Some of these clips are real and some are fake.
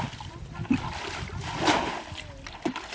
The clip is real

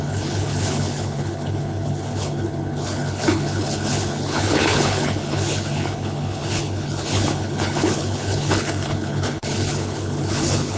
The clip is fake